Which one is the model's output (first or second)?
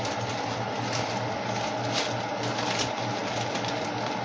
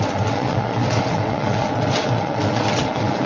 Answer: second